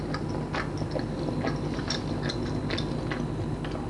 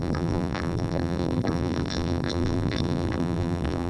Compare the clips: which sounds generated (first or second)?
second